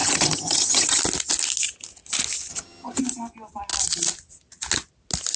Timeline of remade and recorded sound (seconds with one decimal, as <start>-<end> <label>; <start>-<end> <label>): 0.0-1.0 remade; 1.0-2.5 recorded; 2.5-3.0 remade; 3.0-5.4 recorded